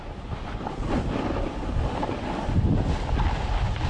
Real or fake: real